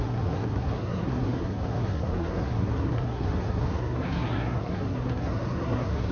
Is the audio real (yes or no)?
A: no